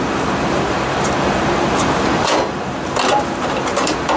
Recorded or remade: remade